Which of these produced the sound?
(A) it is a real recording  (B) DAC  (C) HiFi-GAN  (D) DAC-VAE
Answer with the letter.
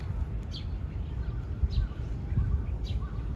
A